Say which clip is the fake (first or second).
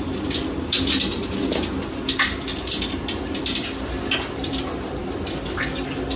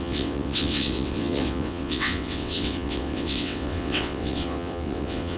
second